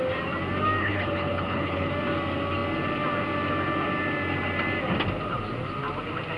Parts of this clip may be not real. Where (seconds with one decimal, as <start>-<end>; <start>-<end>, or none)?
0.8-1.9